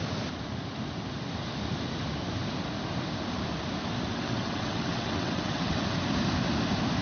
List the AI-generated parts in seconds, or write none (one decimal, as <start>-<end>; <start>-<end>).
4.1-5.8